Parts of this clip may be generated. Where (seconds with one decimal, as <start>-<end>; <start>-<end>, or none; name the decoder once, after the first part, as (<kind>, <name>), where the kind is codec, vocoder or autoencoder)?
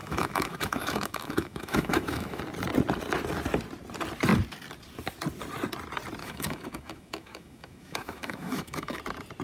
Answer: 0.0-2.4 (autoencoder, DAC-VAE); 6.2-9.0